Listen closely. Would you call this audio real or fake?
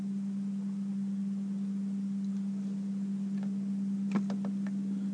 real